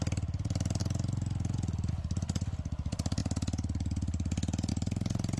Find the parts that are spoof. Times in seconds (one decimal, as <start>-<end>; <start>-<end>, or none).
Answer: 0.0-0.8; 1.9-3.2; 4.7-5.4